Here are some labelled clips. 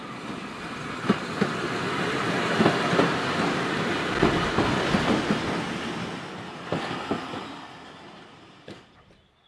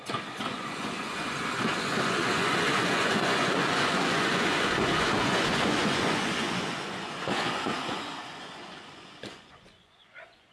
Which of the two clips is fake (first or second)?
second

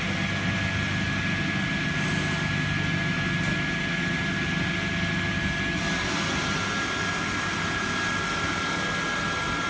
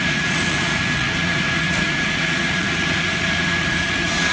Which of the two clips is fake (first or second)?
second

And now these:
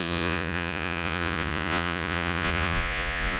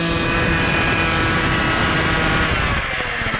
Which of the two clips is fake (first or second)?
first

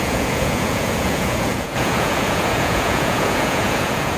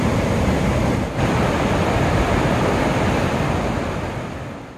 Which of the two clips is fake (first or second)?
first